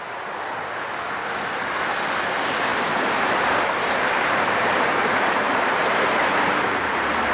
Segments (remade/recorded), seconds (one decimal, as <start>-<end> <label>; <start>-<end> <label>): 0.0-2.7 recorded; 2.7-7.3 remade